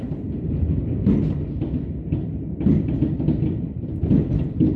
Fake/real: fake